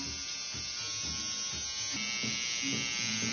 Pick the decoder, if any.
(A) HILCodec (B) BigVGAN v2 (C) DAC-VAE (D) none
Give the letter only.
D